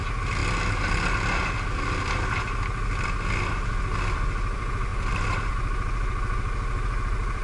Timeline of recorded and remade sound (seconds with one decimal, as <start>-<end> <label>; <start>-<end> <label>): 0.0-7.4 recorded